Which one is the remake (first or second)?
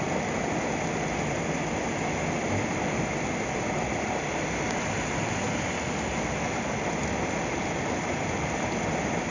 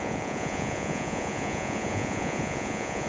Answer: second